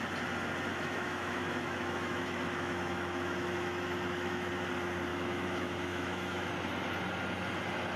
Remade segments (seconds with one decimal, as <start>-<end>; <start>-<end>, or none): 0.7-4.5; 5.1-6.5